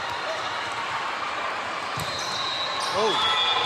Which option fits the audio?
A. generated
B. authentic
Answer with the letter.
B